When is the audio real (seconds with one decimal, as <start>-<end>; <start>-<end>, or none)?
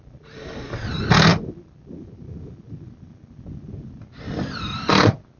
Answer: 0.0-5.4